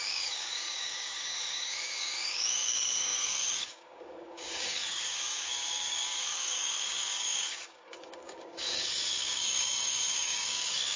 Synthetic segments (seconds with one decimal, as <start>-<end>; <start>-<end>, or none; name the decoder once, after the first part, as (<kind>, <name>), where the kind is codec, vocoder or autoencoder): 0.0-11.0 (codec, DAC)